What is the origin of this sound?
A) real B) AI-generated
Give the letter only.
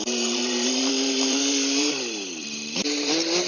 B